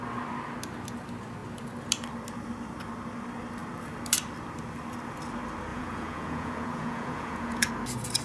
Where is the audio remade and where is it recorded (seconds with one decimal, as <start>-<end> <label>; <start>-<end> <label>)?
0.0-5.7 recorded; 5.7-7.7 remade; 7.7-8.2 recorded